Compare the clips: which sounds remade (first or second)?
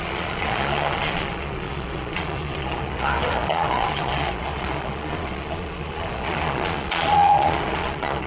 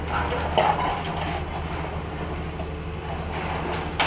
first